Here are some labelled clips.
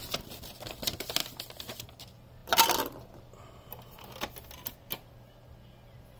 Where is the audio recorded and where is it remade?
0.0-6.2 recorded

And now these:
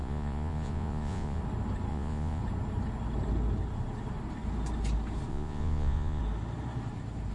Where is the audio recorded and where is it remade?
0.0-1.4 remade; 1.4-1.9 recorded; 1.9-2.4 remade; 2.4-5.3 recorded; 5.3-6.2 remade; 6.2-7.3 recorded

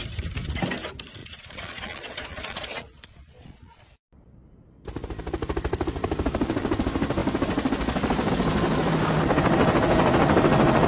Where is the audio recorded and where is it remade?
0.0-1.2 recorded; 1.2-3.8 remade; 3.8-10.9 recorded

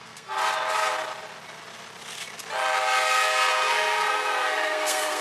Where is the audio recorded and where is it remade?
0.0-0.4 remade; 0.4-3.5 recorded; 3.5-5.2 remade

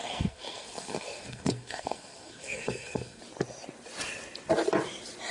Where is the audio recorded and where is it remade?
0.0-3.2 remade; 3.2-5.3 recorded

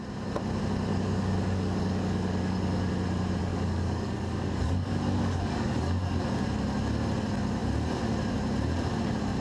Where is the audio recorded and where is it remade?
0.0-0.9 recorded; 0.9-2.9 remade; 2.9-3.4 recorded; 3.4-6.2 remade; 6.2-9.4 recorded